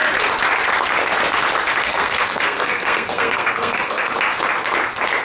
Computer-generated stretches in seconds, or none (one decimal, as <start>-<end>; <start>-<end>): 1.8-4.1